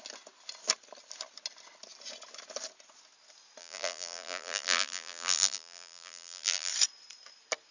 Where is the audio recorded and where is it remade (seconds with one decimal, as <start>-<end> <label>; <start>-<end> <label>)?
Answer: 0.0-3.6 recorded; 3.6-6.7 remade; 6.7-7.7 recorded